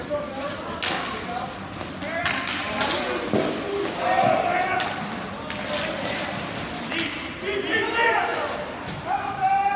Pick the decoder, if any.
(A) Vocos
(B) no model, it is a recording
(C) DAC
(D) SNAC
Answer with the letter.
B